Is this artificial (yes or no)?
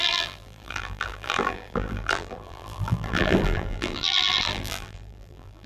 yes